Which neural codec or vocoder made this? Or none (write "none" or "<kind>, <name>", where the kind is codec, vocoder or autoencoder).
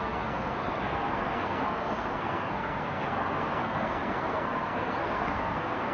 codec, SNAC